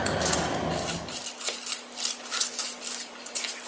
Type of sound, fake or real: real